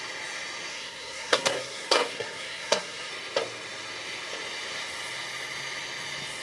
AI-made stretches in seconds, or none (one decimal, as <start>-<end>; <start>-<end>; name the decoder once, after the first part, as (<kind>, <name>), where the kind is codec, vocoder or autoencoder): 0.7-3.1 (codec, SNAC)